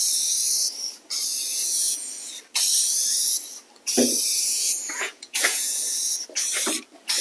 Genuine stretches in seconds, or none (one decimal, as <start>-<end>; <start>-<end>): 0.0-1.5; 2.3-4.3; 6.0-7.2